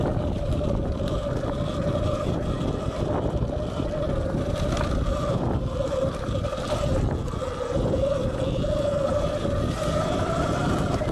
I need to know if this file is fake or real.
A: fake